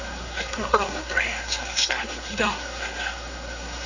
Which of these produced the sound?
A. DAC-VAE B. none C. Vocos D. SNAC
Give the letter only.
D